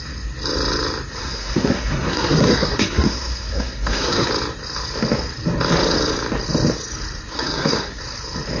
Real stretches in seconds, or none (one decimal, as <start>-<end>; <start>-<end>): 0.0-1.2; 4.3-7.3; 8.0-8.6